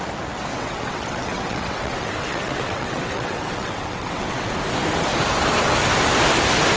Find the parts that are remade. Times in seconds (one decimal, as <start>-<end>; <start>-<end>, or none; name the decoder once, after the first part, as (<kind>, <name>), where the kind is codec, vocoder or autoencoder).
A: 0.5-4.5 (vocoder, WaveNeXt)